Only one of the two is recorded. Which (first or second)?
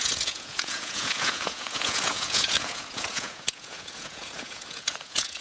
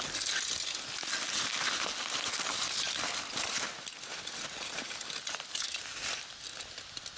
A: second